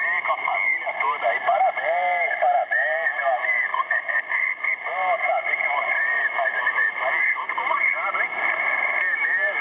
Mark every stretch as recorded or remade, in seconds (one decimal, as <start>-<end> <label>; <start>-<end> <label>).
0.0-9.6 recorded